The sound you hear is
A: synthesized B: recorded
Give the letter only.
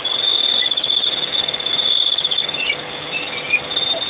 B